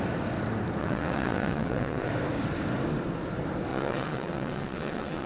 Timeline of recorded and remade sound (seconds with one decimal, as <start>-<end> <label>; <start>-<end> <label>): 0.0-0.8 recorded; 0.8-2.1 remade; 2.1-3.7 recorded; 3.7-5.3 remade